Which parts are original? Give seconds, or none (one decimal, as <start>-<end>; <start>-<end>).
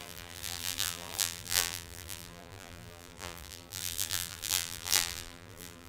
none